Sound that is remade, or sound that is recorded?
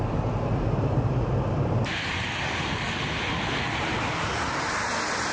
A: recorded